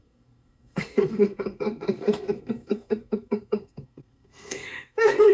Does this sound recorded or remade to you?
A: remade